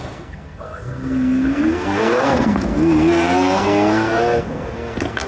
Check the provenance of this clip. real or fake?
fake